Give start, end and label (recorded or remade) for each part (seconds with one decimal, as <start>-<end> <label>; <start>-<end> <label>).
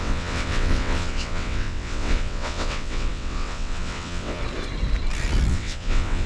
0.0-4.4 remade; 4.4-5.5 recorded; 5.5-6.3 remade